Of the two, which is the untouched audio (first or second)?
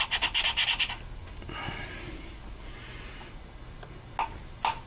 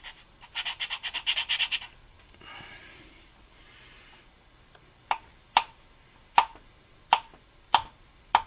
first